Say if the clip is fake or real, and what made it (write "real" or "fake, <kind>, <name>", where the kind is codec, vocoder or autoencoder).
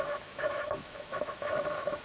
fake, autoencoder, DAC-VAE